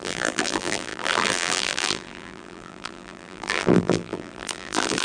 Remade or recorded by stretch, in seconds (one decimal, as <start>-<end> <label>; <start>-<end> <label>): 0.0-5.0 remade